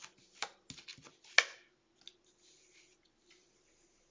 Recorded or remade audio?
recorded